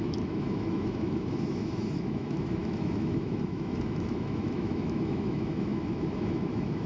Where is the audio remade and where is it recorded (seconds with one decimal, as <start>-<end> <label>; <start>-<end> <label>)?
0.0-6.9 remade